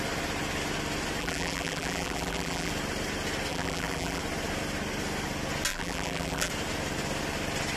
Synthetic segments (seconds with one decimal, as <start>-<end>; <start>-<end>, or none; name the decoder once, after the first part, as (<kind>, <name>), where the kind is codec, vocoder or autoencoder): 1.2-2.7 (vocoder, BigVGAN v2); 3.5-4.2; 5.7-6.5